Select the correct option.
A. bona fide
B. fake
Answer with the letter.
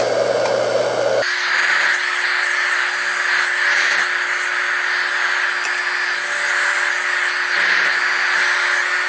A